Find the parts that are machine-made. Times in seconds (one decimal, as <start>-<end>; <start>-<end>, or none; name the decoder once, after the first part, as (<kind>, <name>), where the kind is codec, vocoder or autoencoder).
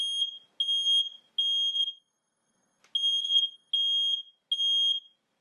1.7-2.8 (codec, SNAC); 3.2-3.7